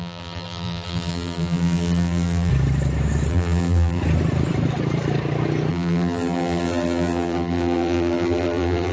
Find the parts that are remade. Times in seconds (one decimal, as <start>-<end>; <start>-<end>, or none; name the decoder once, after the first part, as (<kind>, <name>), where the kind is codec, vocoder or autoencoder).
0.0-2.5 (vocoder, BigVGAN v2); 3.3-4.0; 5.7-8.9